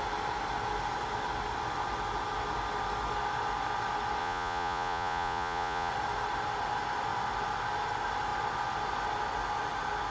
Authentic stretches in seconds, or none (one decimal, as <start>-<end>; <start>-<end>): 0.0-4.2; 5.9-10.1